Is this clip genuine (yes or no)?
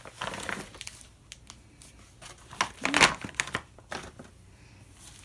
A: yes